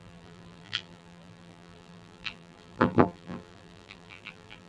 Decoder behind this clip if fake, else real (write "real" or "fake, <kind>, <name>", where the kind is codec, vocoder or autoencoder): fake, vocoder, BigVGAN v2